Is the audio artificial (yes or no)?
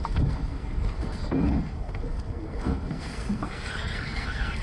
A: yes